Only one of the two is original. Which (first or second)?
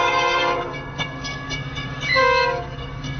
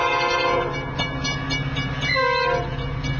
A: second